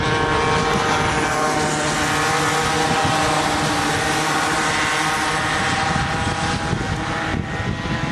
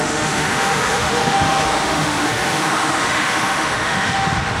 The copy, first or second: second